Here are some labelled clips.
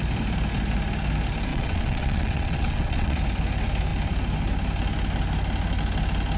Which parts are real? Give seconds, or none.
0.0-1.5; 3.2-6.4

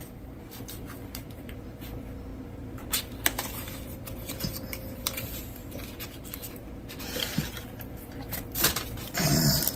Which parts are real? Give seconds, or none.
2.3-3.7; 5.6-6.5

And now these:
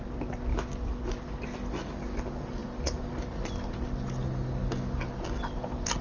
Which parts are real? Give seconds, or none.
0.0-0.5; 1.0-6.0

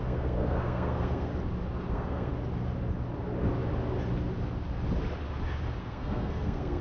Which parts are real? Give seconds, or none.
1.3-1.9; 2.3-5.8